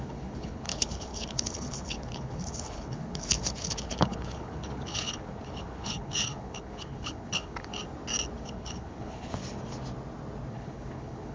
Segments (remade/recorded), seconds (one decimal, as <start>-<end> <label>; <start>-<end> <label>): 0.0-7.7 remade; 7.7-8.4 recorded; 8.4-9.4 remade; 9.4-10.5 recorded; 10.5-11.3 remade